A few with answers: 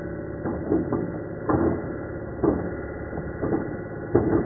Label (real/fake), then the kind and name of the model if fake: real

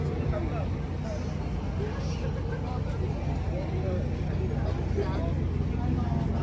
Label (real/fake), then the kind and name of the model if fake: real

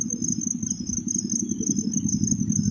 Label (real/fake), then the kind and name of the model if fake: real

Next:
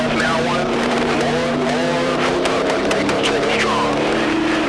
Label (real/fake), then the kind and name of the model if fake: fake, vocoder, BigVGAN v2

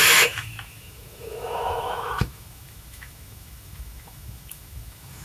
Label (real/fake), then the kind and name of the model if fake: fake, autoencoder, DAC-VAE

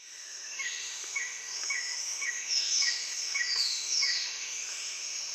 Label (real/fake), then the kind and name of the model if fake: fake, autoencoder, DAC-VAE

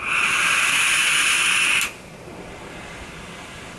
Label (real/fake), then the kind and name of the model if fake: real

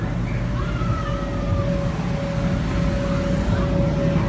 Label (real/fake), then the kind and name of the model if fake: real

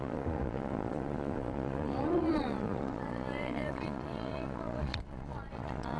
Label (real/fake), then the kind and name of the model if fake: fake, vocoder, Vocos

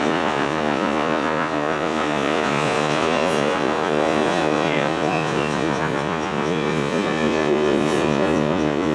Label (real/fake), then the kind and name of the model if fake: fake, vocoder, Vocos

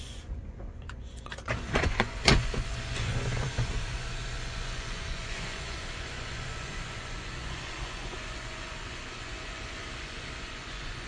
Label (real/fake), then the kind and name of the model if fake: fake, vocoder, Vocos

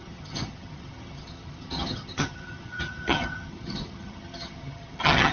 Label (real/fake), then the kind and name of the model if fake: fake, vocoder, HiFi-GAN